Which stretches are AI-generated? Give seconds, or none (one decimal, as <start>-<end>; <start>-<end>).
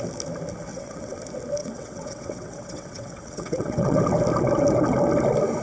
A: 0.7-1.2; 1.6-4.0